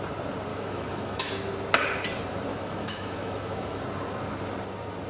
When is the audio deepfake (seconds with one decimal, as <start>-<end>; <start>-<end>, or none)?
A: 0.5-1.3; 2.5-3.8